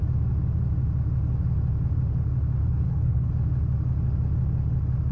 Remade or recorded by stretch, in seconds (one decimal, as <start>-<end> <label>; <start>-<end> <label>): 0.0-2.6 recorded; 2.6-3.3 remade; 3.3-5.1 recorded